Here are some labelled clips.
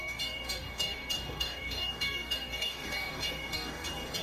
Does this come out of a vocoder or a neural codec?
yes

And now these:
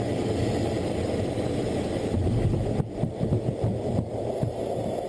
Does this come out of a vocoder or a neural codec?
no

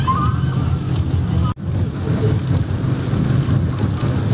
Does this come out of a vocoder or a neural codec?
no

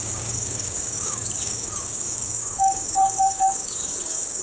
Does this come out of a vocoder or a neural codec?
yes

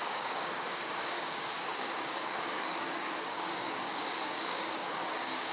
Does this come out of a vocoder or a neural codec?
yes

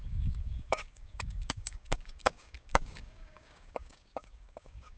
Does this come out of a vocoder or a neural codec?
yes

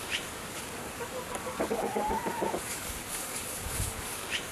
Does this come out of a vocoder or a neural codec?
yes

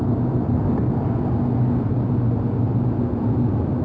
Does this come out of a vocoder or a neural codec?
no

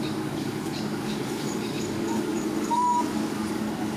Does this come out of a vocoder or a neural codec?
yes